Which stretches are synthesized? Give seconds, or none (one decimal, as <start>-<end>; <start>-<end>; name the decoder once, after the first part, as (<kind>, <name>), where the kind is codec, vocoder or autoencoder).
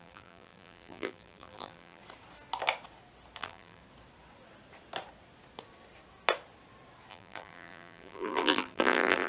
0.0-2.0 (vocoder, BigVGAN v2); 3.4-3.8; 7.1-9.3